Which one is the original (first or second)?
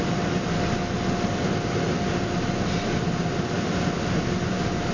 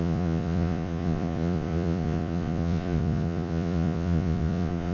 first